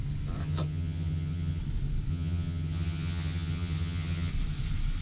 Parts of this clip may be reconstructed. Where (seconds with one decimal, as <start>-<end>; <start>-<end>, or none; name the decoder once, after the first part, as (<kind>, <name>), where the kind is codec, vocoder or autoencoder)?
0.4-1.6 (vocoder, HiFi-GAN); 2.1-4.3

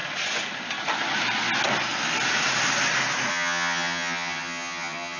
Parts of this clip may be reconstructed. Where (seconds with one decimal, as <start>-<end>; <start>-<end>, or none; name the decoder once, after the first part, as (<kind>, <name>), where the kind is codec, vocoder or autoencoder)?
3.3-5.2 (vocoder, HiFi-GAN)

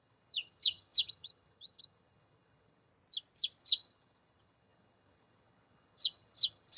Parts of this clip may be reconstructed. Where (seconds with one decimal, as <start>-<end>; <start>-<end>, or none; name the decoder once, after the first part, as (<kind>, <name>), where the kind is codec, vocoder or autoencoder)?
0.0-2.9 (vocoder, HiFi-GAN); 3.6-6.8

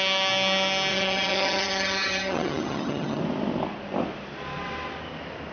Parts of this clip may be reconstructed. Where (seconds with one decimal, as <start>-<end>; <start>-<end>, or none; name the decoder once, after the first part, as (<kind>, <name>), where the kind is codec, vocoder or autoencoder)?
0.9-3.2 (vocoder, HiFi-GAN)

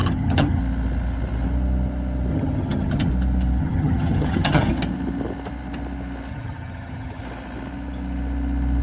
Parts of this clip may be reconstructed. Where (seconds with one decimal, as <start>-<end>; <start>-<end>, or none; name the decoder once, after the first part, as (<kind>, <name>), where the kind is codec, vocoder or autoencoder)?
0.0-0.6 (vocoder, HiFi-GAN); 2.3-3.1; 3.6-4.7; 6.3-7.2

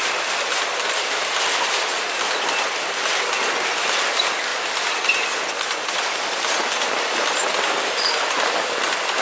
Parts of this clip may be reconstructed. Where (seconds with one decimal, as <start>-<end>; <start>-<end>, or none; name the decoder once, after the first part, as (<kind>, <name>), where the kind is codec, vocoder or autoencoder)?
none

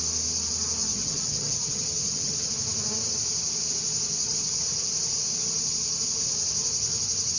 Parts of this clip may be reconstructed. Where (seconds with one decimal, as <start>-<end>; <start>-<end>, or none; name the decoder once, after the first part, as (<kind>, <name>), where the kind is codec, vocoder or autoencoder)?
0.8-2.5 (vocoder, HiFi-GAN); 4.2-4.8

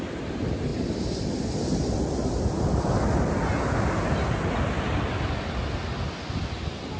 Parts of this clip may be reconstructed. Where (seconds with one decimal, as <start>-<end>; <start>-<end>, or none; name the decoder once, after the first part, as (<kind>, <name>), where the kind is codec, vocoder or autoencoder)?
none